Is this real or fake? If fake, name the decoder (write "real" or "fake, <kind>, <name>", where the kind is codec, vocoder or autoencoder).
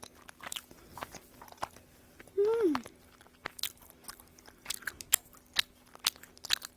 real